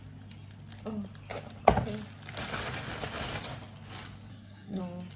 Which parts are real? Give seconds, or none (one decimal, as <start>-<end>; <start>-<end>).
0.0-4.3; 4.8-5.2